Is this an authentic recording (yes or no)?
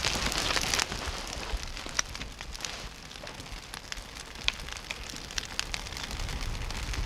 yes